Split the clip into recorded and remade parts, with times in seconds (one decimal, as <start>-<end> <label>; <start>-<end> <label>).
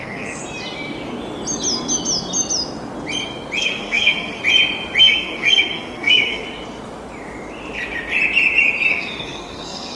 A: 0.0-0.4 remade; 0.4-3.6 recorded; 3.6-4.4 remade; 4.4-5.0 recorded; 5.0-6.4 remade; 6.4-8.9 recorded; 8.9-10.0 remade